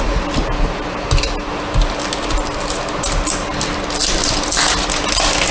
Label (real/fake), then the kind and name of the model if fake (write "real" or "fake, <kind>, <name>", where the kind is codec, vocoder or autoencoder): real